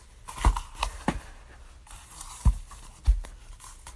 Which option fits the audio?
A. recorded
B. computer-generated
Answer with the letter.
A